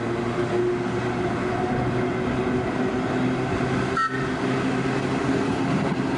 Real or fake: real